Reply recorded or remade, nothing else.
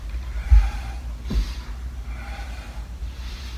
remade